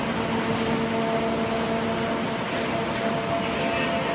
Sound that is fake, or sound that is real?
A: real